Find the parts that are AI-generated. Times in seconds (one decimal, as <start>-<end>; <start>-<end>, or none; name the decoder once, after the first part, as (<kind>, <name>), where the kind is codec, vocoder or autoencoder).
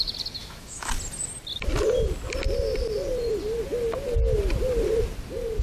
0.4-0.9 (autoencoder, DAC-VAE)